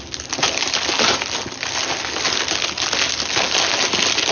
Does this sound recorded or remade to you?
recorded